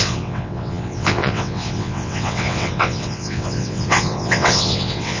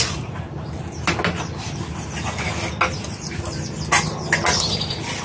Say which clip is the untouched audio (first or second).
second